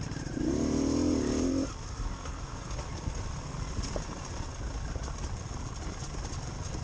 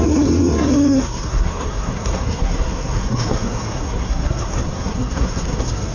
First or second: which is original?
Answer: first